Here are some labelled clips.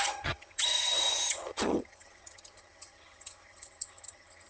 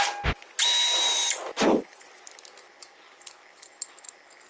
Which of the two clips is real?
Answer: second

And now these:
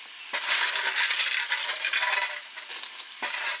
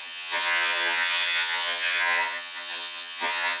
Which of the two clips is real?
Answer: first